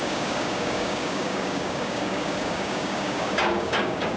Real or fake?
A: fake